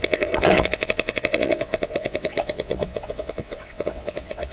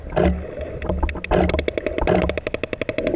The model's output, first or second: first